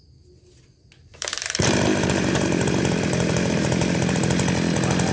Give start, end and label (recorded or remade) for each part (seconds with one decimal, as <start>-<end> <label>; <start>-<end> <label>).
0.0-1.1 recorded; 1.1-4.2 remade; 4.2-5.1 recorded